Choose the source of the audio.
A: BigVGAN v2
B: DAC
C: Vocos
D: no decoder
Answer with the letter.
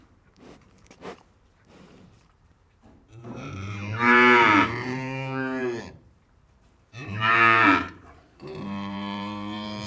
A